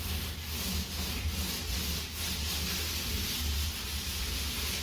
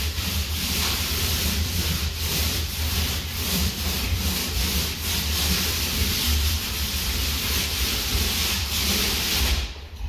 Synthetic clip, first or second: second